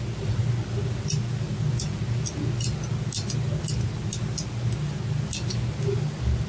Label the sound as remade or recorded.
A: recorded